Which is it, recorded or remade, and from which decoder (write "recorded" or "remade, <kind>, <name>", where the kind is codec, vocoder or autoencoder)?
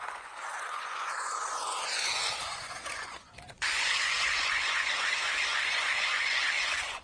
remade, vocoder, Vocos